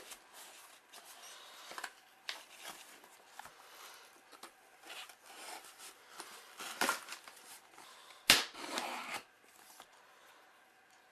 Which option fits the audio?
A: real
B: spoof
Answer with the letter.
A